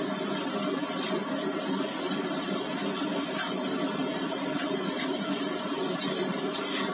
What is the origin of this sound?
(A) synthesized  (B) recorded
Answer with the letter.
B